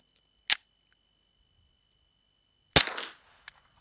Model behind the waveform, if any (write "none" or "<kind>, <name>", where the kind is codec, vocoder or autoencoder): none